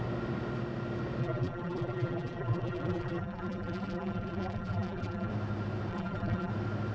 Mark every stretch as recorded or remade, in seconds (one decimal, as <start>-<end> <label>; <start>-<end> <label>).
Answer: 0.0-1.2 recorded; 1.2-5.3 remade; 5.3-5.9 recorded; 5.9-6.5 remade; 6.5-6.9 recorded